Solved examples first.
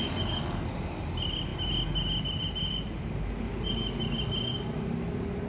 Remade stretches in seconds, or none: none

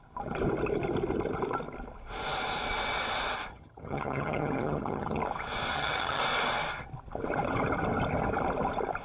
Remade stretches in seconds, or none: 3.5-5.2 (vocoder, HiFi-GAN); 5.7-6.2

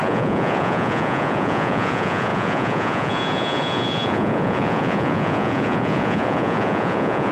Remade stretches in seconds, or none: 0.0-7.3 (vocoder, Vocos)

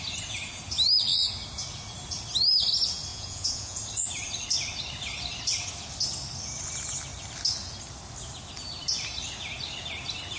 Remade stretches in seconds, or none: 3.1-3.8 (vocoder, Vocos)